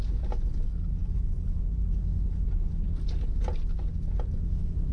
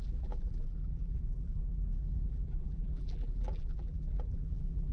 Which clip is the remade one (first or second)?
second